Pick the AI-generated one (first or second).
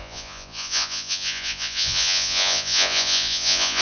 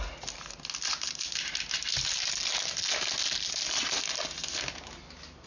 first